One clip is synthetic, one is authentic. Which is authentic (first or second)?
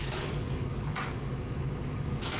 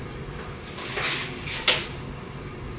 second